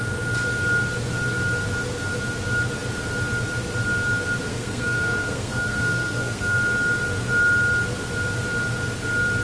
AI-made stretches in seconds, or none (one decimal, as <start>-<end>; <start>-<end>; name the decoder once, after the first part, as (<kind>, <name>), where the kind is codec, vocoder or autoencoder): 4.5-6.6 (codec, SNAC)